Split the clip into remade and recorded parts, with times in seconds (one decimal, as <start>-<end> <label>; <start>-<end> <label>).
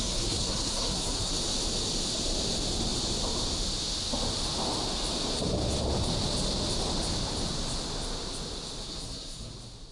0.0-1.3 remade; 1.3-8.8 recorded; 8.8-9.5 remade; 9.5-9.9 recorded